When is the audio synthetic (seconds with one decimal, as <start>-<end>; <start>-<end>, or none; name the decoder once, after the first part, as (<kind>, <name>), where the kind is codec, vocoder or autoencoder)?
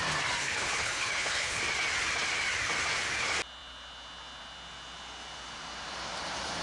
0.4-1.6 (codec, HILCodec)